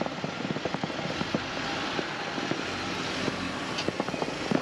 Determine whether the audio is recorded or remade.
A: recorded